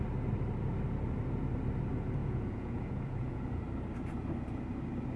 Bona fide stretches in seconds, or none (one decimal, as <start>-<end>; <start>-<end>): 0.0-2.2; 3.6-5.2

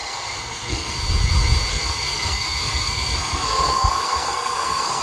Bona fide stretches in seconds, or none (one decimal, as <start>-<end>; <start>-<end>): 1.0-1.7

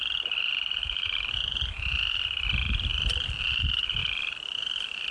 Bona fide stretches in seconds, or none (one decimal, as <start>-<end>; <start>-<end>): 0.0-2.9; 3.4-4.0

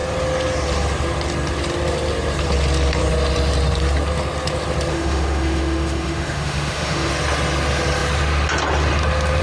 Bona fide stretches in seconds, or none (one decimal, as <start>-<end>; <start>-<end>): 0.0-4.9; 7.1-9.4

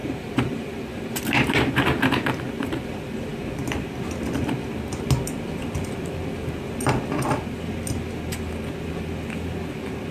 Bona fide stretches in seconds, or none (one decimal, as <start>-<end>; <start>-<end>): 2.8-10.1

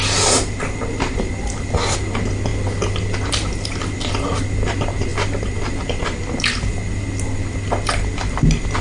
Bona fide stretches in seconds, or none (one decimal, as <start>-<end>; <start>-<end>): 0.0-8.8

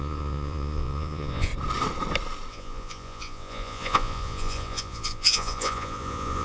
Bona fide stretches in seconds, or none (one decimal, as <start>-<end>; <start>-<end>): 1.5-2.5

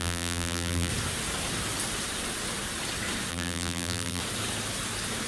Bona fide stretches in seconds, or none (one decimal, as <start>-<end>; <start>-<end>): 0.9-3.3; 4.2-5.3